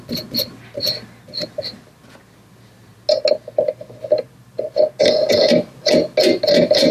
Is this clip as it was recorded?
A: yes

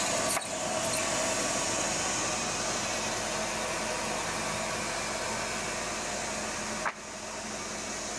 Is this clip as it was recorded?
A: yes